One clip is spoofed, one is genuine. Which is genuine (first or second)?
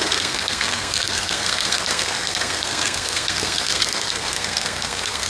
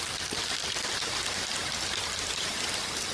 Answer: second